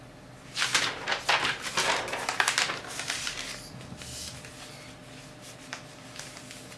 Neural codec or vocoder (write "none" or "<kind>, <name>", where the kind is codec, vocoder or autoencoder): none